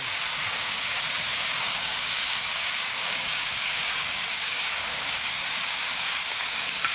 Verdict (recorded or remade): remade